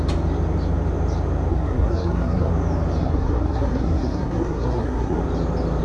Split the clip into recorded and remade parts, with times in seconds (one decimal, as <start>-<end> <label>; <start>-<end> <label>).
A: 0.0-1.5 recorded; 1.5-2.5 remade; 2.5-3.0 recorded; 3.0-5.2 remade; 5.2-5.8 recorded